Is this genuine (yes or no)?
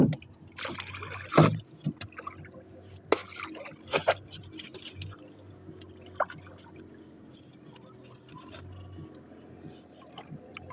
yes